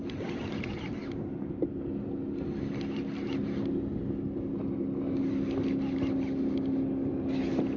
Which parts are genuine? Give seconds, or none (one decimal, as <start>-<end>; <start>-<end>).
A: 0.0-7.8